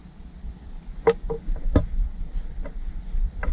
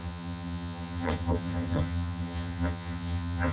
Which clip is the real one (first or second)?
first